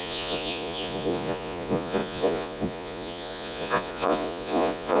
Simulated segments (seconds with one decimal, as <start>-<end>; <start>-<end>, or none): 0.0-5.0